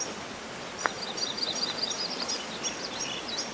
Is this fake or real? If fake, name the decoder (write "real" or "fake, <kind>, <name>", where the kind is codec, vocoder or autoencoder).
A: real